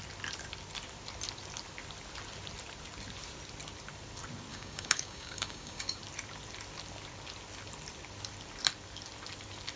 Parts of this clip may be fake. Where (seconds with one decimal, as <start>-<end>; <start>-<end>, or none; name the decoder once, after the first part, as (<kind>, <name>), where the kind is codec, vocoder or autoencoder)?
4.5-6.0 (codec, DAC)